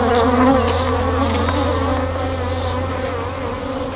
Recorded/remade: recorded